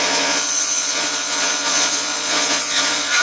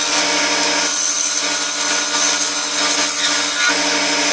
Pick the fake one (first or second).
first